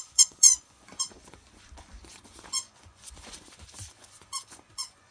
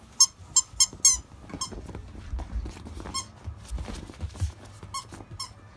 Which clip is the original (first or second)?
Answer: second